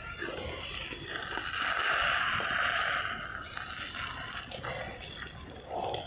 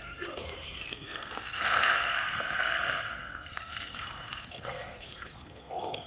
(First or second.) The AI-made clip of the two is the second